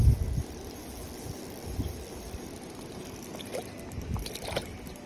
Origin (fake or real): real